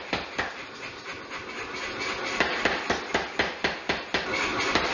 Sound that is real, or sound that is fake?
real